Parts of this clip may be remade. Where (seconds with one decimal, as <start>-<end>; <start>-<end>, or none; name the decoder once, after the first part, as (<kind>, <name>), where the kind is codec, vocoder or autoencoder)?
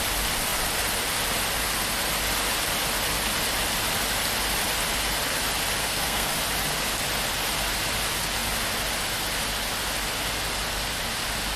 5.8-6.3 (codec, SNAC)